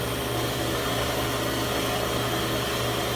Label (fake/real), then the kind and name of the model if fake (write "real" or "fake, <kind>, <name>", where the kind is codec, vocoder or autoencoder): real